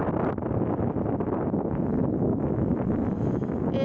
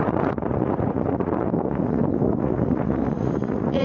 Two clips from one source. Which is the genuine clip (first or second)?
first